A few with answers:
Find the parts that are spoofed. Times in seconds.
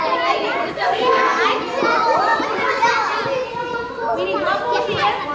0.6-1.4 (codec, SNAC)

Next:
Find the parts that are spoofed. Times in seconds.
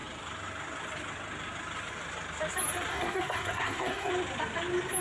2.9-4.1 (codec, SNAC)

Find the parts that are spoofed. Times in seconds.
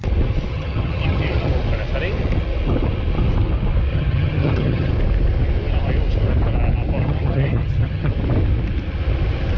0.5-1.5 (vocoder, HiFi-GAN); 3.9-4.9; 7.0-8.1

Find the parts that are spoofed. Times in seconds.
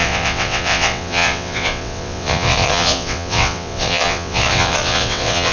0.0-5.5 (vocoder, WaveNeXt)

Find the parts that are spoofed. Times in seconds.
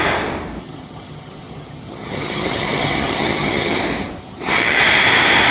0.6-3.8 (vocoder, HiFi-GAN); 4.2-4.8